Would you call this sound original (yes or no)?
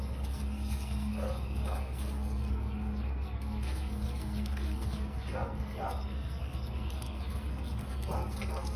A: no